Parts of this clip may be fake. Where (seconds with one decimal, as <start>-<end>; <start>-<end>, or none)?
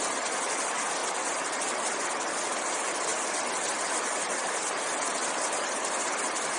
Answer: 1.0-1.9